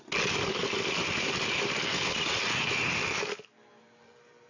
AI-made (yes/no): no